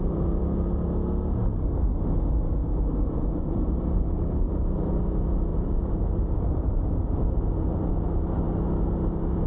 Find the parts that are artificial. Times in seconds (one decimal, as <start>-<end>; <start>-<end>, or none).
2.6-4.9; 5.5-7.9